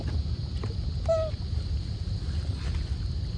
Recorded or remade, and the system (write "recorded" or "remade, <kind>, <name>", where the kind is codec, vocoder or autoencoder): recorded